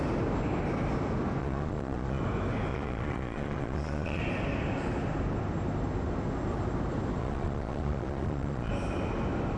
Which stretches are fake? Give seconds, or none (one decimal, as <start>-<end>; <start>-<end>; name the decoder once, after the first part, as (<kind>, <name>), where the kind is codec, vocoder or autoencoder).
1.4-2.2 (vocoder, Vocos); 2.7-4.2; 7.2-8.7